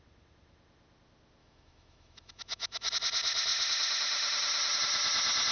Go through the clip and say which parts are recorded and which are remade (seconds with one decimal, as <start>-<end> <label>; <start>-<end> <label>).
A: 0.0-1.4 recorded; 1.4-2.9 remade; 2.9-5.5 recorded